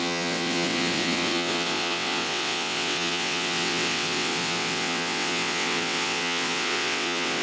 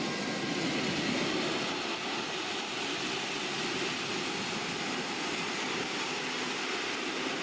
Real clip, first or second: second